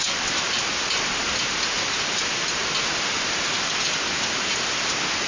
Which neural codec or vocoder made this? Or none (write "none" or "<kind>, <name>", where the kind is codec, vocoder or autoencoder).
none